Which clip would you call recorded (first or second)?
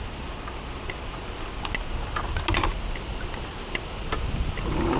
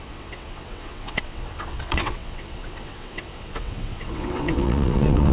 first